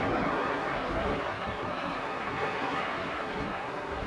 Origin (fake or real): fake